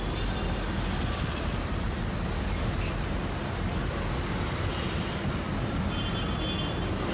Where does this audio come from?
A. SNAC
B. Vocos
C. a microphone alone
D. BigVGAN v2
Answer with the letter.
C